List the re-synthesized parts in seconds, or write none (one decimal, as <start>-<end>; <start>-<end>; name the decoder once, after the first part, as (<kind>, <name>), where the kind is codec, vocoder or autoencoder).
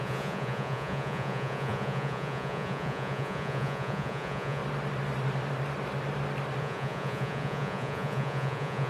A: 0.0-4.6 (vocoder, Vocos); 6.6-8.9